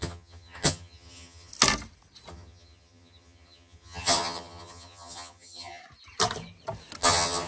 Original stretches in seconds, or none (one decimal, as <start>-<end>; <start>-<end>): 1.5-2.3; 5.8-7.0

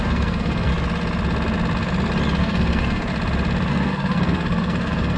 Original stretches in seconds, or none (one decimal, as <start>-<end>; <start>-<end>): 0.7-2.4; 3.1-3.7